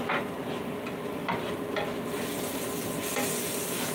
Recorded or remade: recorded